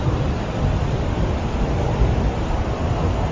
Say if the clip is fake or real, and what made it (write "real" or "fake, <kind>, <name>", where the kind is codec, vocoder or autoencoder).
real